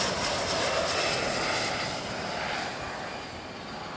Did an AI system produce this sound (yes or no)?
no